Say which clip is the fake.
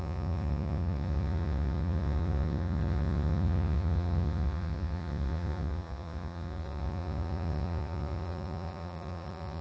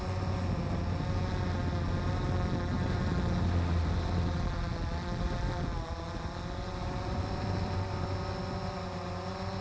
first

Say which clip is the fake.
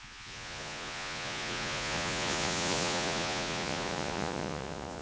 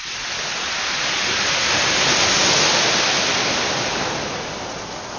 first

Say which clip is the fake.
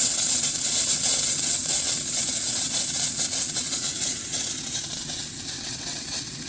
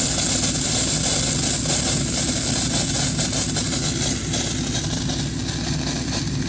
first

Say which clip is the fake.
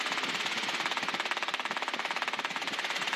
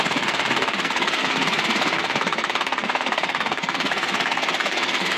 second